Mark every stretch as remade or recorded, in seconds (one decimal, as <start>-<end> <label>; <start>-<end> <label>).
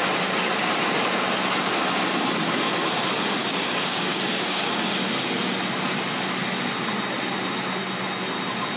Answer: 0.0-3.4 recorded; 3.4-4.6 remade; 4.6-8.8 recorded